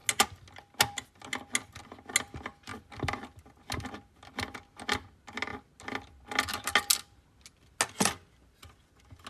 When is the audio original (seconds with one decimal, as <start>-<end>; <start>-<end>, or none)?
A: 0.0-9.3